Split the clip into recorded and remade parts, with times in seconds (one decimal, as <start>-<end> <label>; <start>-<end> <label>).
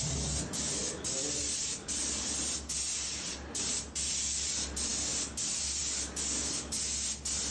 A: 0.0-7.5 recorded